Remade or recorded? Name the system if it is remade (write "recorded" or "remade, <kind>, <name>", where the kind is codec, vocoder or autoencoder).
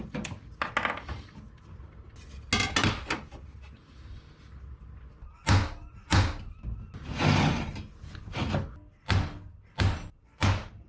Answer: recorded